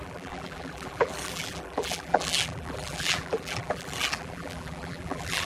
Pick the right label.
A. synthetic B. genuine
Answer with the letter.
A